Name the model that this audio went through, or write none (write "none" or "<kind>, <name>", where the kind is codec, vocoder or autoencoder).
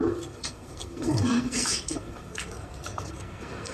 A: codec, SNAC